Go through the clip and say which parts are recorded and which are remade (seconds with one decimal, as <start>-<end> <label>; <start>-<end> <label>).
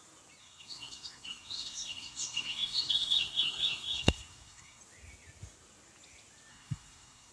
0.0-0.4 recorded; 0.4-4.8 remade; 4.8-6.5 recorded; 6.5-7.3 remade